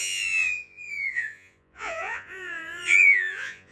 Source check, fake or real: fake